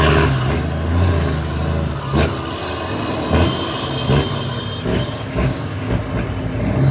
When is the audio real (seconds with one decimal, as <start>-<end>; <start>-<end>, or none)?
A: 0.0-4.9; 6.0-6.9